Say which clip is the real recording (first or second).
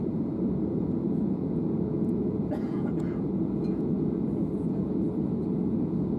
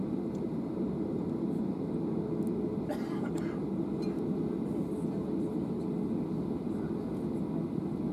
second